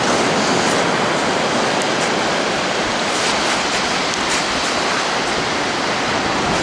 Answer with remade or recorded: recorded